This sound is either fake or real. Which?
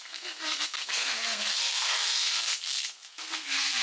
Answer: fake